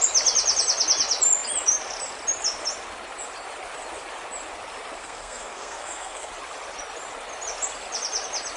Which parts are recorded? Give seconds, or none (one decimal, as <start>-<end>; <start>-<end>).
0.0-5.0; 6.3-8.6